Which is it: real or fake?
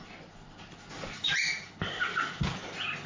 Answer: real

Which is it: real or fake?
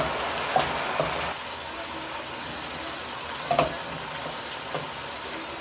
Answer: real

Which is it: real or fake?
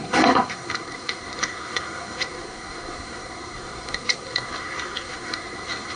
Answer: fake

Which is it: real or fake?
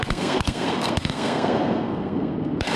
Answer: fake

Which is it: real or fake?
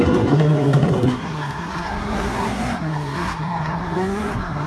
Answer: fake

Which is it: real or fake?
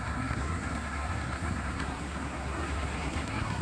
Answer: fake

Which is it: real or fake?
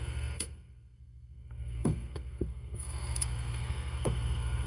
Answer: fake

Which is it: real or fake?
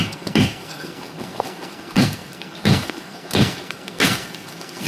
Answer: fake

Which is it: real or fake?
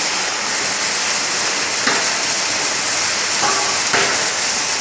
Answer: real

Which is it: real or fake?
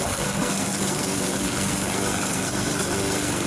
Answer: fake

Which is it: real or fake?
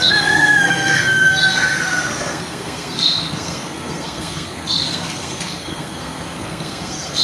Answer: fake